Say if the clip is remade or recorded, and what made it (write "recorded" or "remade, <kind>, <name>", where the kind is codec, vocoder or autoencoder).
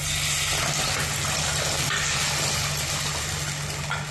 recorded